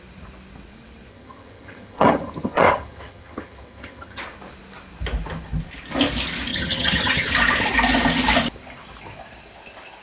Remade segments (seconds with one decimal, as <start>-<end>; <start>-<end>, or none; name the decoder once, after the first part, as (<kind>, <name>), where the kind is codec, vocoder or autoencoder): 1.1-4.2 (vocoder, HiFi-GAN); 6.5-7.3

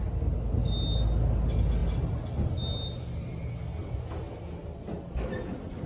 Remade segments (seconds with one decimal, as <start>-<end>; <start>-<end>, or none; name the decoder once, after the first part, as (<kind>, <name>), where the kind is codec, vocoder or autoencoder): none

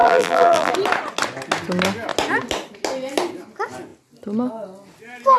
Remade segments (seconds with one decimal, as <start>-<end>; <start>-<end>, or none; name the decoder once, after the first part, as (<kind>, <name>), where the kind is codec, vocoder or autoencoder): 0.0-0.7 (vocoder, BigVGAN v2)

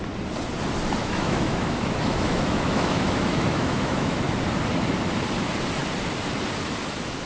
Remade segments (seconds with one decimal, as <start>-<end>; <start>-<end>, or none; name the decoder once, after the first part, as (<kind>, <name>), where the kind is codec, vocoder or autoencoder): 1.0-4.2 (autoencoder, DAC-VAE)